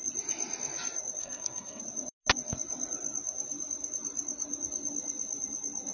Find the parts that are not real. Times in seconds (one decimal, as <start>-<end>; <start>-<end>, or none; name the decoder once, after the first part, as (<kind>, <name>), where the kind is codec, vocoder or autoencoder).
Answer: 1.2-1.8 (codec, SNAC)